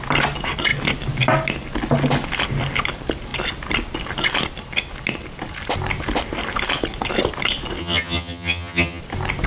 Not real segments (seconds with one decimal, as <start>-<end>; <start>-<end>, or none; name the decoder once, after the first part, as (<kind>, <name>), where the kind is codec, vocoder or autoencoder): 7.8-9.0 (vocoder, HiFi-GAN)

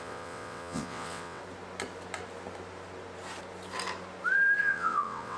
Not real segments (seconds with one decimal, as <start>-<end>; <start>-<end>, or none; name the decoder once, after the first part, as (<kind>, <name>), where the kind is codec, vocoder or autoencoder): 0.0-1.4 (vocoder, WaveNeXt); 4.6-5.4

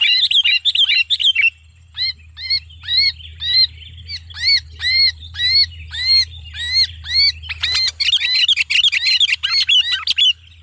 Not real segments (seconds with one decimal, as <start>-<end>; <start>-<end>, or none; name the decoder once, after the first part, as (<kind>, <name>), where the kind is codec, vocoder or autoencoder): none